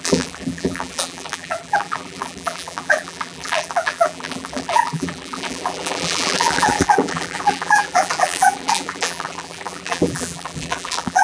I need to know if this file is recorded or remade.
remade